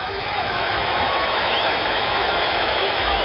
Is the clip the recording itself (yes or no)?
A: no